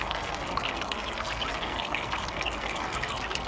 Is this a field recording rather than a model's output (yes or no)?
no